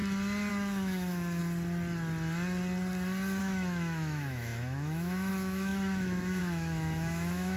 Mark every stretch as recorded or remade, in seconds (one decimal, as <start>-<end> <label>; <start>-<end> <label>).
0.0-0.5 recorded; 0.5-1.4 remade; 1.4-3.4 recorded; 3.4-7.6 remade